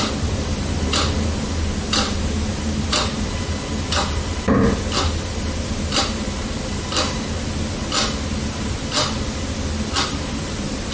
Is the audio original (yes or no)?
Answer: yes